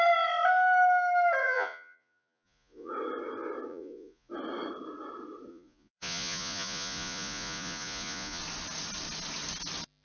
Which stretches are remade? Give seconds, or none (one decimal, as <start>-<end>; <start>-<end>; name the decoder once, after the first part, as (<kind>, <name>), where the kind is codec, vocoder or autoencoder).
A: 1.4-2.9 (vocoder, Vocos); 3.7-4.3; 5.5-8.4